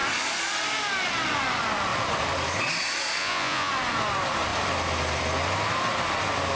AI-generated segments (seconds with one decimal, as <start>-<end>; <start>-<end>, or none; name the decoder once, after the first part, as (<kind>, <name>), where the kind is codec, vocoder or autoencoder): 3.2-3.7 (vocoder, Vocos)

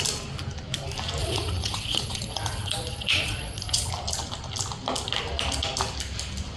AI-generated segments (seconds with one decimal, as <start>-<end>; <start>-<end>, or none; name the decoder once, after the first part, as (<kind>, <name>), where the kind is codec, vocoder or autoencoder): 1.2-3.9 (vocoder, Vocos)

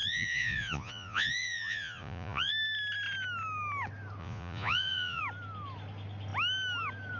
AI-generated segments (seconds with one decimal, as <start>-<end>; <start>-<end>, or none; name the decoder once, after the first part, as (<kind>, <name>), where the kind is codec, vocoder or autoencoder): 0.0-2.5 (vocoder, Vocos); 4.2-5.2

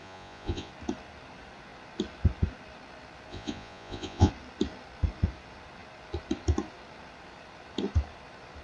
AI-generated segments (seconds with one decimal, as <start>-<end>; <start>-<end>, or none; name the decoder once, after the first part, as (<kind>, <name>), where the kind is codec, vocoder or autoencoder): 0.0-0.7 (vocoder, Vocos); 3.3-4.3

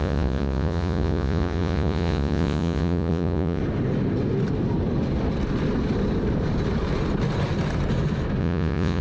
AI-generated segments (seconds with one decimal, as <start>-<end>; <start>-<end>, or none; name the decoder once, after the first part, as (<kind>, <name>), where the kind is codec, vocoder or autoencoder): 0.0-3.6 (vocoder, Vocos); 8.4-9.0

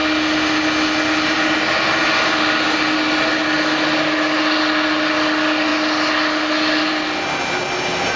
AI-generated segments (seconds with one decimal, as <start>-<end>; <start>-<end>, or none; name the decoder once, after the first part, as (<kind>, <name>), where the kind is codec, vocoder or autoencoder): none